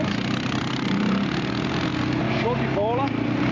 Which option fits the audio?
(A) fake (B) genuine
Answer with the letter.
B